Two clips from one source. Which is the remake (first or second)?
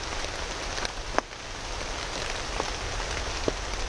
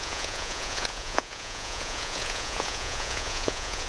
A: second